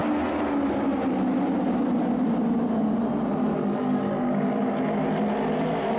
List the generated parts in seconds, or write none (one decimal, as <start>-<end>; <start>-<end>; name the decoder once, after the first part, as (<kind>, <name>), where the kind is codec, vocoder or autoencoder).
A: 3.5-4.8 (codec, DAC)